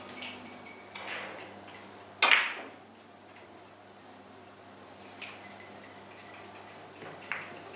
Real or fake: real